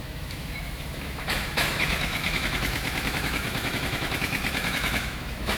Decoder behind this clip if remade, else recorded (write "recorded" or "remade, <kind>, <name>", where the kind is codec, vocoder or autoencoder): remade, autoencoder, DAC-VAE